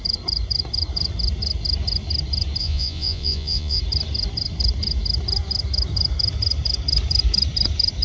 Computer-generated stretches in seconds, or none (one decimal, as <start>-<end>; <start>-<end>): 2.6-3.8